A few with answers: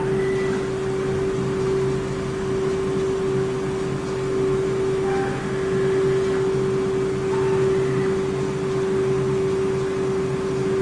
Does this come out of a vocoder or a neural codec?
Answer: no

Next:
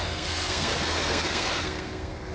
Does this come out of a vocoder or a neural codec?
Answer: yes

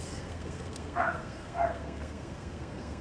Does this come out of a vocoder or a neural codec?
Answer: yes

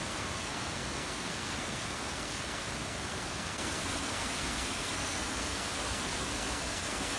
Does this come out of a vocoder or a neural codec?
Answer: yes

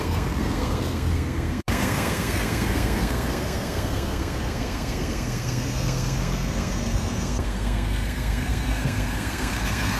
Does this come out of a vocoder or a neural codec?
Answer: yes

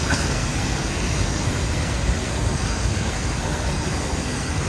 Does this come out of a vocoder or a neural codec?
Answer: yes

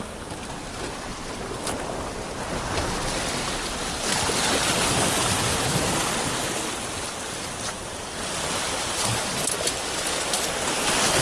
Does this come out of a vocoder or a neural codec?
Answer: no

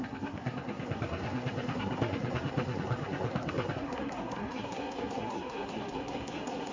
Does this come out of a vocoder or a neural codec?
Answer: yes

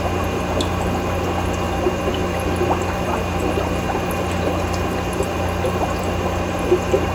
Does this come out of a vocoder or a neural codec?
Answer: no